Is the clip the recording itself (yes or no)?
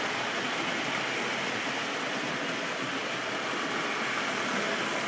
yes